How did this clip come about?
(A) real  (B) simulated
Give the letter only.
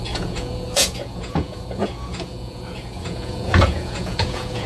B